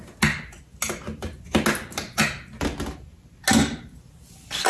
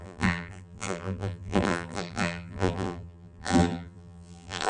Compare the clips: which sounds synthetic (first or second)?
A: second